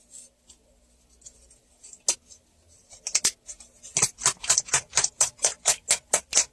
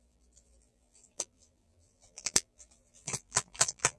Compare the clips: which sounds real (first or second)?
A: first